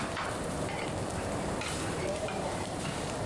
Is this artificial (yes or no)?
yes